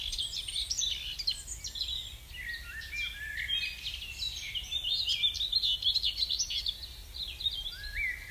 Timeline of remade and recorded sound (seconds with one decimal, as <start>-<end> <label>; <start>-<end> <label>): 0.0-8.3 recorded